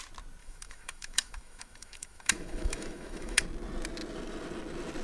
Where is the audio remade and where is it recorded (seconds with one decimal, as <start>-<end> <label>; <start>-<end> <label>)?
0.0-0.4 recorded; 0.4-3.4 remade; 3.4-5.0 recorded